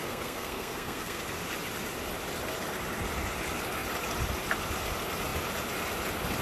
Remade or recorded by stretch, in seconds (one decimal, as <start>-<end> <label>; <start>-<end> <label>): 0.0-1.2 remade; 1.2-6.4 recorded